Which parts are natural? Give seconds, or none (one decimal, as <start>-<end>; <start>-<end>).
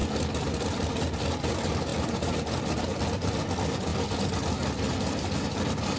0.0-6.0